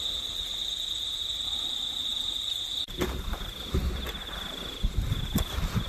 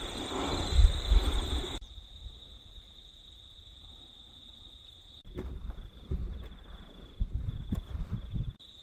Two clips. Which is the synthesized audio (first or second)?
second